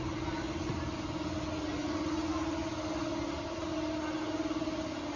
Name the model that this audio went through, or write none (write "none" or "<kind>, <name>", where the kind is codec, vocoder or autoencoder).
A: none